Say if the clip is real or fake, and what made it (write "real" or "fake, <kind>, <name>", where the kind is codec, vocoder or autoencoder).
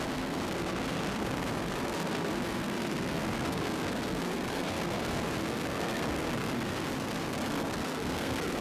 fake, codec, SNAC